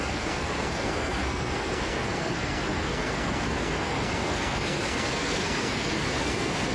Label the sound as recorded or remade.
remade